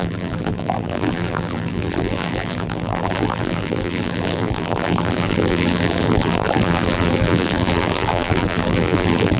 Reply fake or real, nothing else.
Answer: fake